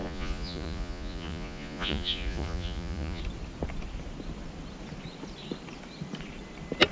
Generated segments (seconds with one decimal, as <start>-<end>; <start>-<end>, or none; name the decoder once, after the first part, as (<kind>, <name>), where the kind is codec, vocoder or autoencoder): 0.0-3.2 (vocoder, Vocos)